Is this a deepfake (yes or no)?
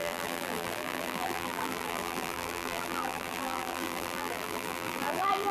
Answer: yes